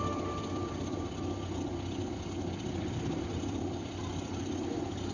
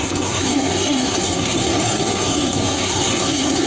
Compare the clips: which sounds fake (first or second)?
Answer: second